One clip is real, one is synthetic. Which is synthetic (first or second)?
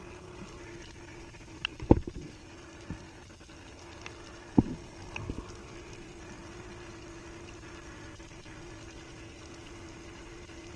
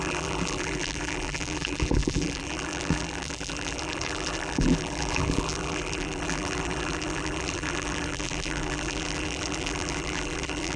second